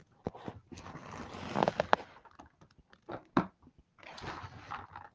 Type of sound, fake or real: real